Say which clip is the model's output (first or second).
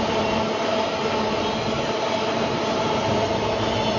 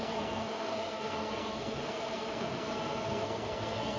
second